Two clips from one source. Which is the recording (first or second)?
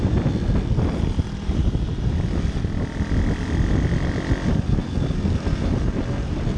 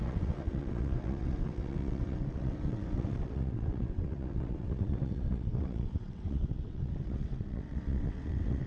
first